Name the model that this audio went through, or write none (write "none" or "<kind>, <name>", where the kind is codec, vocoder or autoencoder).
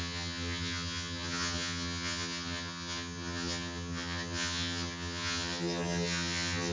vocoder, HiFi-GAN